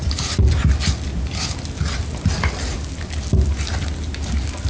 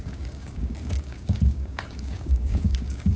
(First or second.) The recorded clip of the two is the first